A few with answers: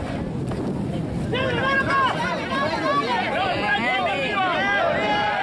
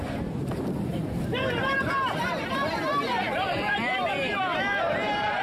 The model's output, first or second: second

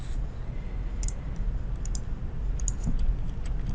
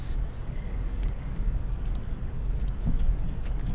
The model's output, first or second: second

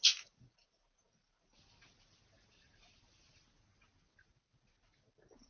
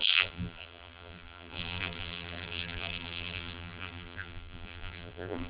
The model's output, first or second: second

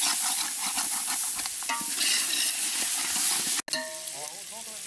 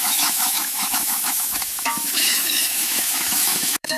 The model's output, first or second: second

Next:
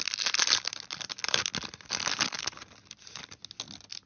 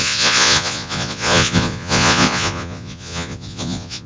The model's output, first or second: second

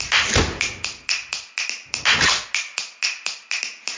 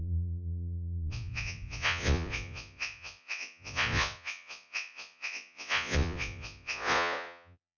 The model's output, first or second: second